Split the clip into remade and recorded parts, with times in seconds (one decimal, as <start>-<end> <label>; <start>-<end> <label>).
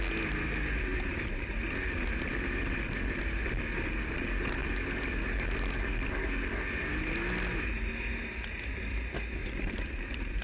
0.0-0.9 recorded; 0.9-1.5 remade; 1.5-9.4 recorded; 9.4-10.4 remade